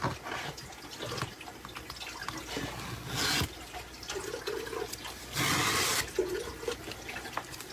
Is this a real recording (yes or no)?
yes